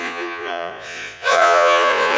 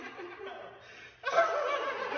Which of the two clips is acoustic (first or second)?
second